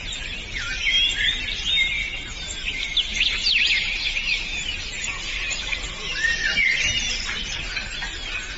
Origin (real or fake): real